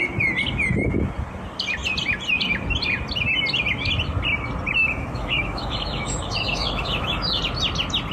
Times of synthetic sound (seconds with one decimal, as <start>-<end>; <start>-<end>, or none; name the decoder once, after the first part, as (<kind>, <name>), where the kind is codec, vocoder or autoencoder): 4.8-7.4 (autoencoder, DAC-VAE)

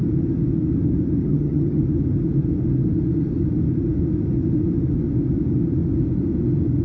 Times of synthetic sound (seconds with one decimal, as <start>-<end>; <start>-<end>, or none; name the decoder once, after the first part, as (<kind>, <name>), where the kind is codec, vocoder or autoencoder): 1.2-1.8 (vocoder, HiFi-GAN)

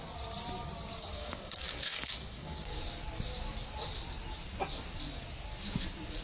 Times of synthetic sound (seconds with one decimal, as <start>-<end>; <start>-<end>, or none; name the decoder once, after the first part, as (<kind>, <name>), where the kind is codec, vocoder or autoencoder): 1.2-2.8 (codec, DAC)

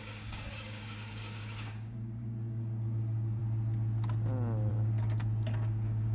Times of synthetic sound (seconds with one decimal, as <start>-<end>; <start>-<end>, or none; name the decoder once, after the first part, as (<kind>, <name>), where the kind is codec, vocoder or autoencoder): 0.0-3.4 (codec, DAC); 4.7-6.1

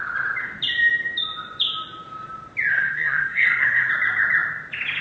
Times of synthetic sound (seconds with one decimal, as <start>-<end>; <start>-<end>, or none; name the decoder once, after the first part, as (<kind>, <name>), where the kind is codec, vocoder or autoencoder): 2.7-3.9 (codec, SNAC)

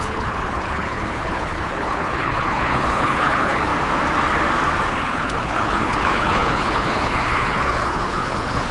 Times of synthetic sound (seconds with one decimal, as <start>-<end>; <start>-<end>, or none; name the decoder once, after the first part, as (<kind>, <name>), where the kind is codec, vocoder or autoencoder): 0.0-3.7 (codec, HILCodec); 4.9-8.7

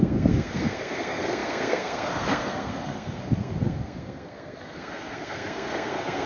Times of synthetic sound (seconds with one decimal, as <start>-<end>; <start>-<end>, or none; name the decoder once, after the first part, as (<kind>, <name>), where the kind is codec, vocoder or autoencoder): 0.0-6.3 (codec, SNAC)

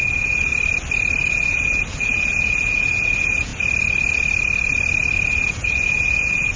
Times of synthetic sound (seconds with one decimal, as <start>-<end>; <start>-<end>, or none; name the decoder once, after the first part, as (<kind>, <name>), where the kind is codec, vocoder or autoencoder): 0.0-0.5 (vocoder, Vocos); 1.3-3.5; 5.3-6.6